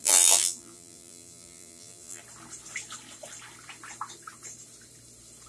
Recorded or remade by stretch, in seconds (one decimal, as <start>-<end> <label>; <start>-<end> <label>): 0.0-2.2 remade; 2.2-5.5 recorded